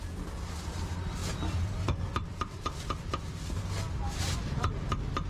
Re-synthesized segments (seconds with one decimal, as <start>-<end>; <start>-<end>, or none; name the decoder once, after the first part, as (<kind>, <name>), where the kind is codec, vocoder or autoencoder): none